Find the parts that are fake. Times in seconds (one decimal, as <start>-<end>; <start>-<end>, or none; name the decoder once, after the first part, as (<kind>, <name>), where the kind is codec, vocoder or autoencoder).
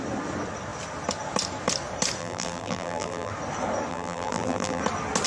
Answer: 2.2-3.3 (vocoder, BigVGAN v2); 3.9-4.8